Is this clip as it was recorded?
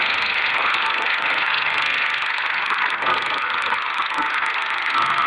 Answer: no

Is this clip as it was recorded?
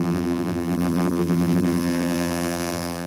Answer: no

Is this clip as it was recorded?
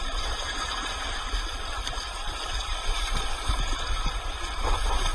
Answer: no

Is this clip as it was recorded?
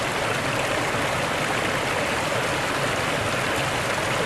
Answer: yes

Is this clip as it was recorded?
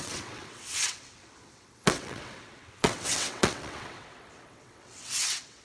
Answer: no